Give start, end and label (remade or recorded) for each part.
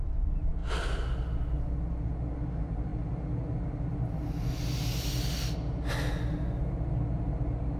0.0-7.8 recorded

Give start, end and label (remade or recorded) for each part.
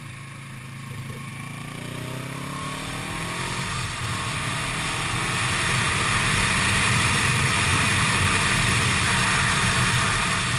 0.0-1.3 remade; 1.3-5.8 recorded; 5.8-10.6 remade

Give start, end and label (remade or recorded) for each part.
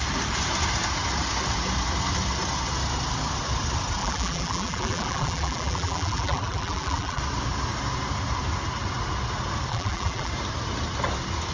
0.0-4.0 recorded; 4.0-7.2 remade; 7.2-9.7 recorded; 9.7-10.3 remade; 10.3-11.5 recorded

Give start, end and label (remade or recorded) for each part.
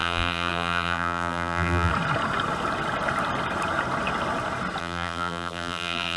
0.0-1.9 remade; 1.9-4.8 recorded; 4.8-6.2 remade